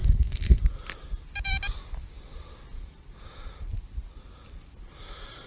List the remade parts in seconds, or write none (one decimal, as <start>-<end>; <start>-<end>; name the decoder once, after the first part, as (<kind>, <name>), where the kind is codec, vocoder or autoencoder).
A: 0.0-0.6 (codec, SNAC)